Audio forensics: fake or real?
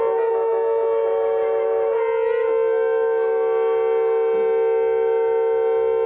real